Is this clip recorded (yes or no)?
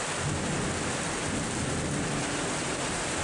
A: yes